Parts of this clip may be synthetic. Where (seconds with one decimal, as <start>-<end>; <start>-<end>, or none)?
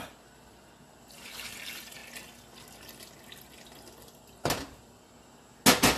none